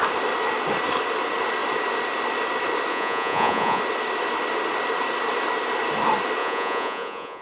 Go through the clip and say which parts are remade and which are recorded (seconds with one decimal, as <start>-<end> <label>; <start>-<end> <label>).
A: 0.0-2.9 recorded; 2.9-3.8 remade; 3.8-6.4 recorded; 6.4-7.4 remade